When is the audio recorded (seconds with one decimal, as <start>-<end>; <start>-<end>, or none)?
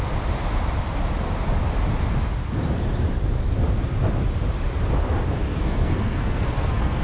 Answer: 0.0-5.5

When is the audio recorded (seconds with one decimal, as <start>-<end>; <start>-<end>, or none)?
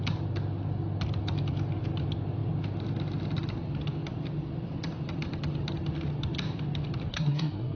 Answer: 0.0-7.1